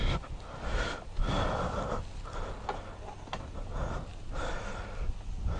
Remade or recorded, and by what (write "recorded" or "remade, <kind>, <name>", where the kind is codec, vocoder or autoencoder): recorded